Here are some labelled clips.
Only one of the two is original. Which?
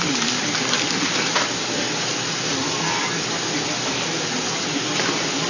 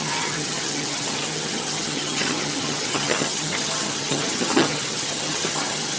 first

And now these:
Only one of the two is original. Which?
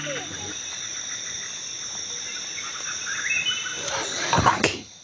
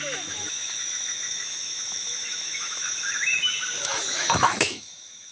first